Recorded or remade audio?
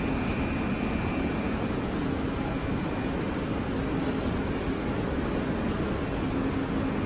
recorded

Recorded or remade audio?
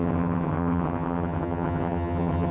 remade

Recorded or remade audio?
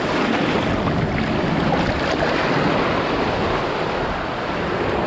recorded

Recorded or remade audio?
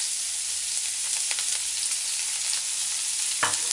recorded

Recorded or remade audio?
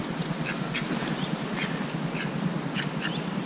recorded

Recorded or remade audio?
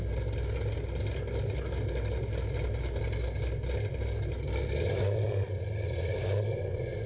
recorded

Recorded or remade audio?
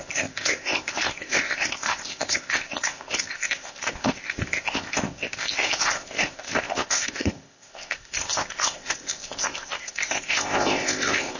remade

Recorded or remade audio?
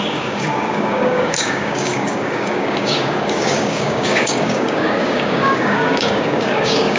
remade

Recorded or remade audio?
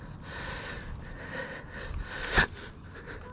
recorded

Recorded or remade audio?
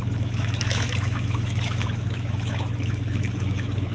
remade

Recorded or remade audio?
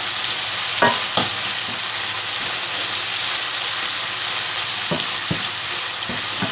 recorded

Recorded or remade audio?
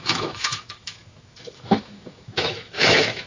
remade